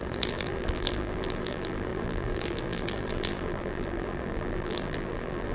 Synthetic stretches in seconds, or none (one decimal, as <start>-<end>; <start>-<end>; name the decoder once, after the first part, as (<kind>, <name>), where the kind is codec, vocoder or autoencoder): 0.0-5.5 (vocoder, BigVGAN v2)